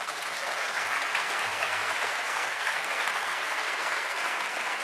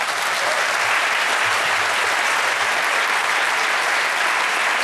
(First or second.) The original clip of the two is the second